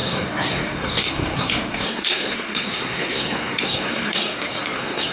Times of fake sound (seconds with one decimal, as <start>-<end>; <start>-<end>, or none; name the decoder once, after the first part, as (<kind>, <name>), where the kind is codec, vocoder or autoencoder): 0.0-5.1 (codec, SNAC)